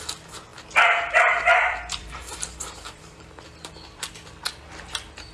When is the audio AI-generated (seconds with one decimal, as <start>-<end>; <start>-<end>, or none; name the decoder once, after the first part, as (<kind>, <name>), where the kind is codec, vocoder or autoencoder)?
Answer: 0.5-3.7 (vocoder, BigVGAN v2)

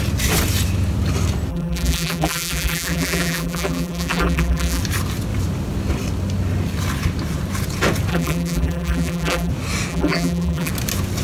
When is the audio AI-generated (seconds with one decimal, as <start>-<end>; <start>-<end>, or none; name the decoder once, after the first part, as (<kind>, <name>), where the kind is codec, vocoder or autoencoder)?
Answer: 1.5-4.8 (vocoder, BigVGAN v2); 8.1-9.5; 9.9-10.7

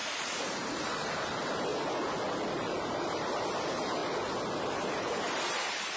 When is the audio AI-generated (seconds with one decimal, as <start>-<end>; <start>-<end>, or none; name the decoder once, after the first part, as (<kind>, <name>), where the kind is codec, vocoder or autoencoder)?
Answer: 0.0-1.7 (vocoder, BigVGAN v2); 2.4-4.0; 4.6-6.0

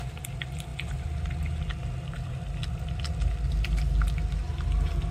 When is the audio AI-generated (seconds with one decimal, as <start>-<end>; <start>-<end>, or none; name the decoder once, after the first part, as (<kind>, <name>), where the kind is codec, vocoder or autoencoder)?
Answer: none

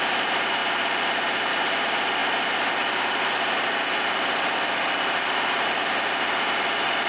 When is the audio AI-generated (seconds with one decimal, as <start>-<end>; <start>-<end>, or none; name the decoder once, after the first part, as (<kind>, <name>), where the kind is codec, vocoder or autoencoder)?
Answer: 0.0-0.6 (vocoder, BigVGAN v2); 1.5-7.1

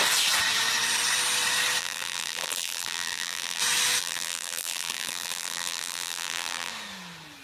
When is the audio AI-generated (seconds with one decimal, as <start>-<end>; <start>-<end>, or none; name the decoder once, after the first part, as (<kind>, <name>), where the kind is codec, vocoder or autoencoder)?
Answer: 1.8-3.6 (vocoder, BigVGAN v2); 4.0-6.7